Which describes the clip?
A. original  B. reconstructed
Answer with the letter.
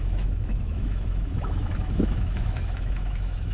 B